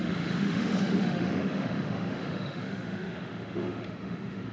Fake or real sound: fake